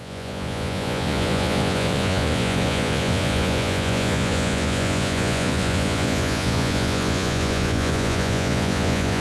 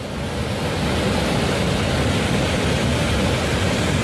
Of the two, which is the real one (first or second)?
second